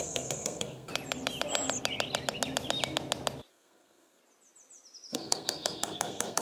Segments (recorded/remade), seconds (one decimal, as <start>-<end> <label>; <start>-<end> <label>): 0.0-0.9 remade; 0.9-3.5 recorded; 3.5-4.2 remade; 4.2-5.1 recorded; 5.1-6.4 remade